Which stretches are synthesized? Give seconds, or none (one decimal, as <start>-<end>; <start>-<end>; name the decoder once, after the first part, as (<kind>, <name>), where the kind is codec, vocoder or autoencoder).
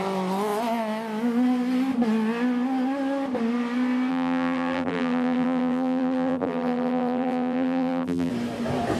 4.1-8.3 (vocoder, BigVGAN v2)